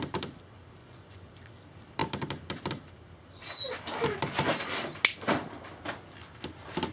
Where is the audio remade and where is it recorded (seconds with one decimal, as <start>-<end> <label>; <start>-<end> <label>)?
0.0-0.8 recorded; 0.8-1.3 remade; 1.3-6.9 recorded